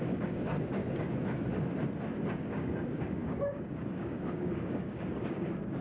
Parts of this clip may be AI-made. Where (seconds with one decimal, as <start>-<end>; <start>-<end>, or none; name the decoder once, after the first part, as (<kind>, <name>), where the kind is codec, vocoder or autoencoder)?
0.0-0.8 (codec, DAC); 2.3-5.8